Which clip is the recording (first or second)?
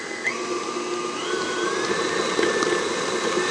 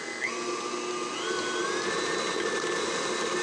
second